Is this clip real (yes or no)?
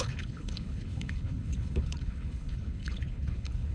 no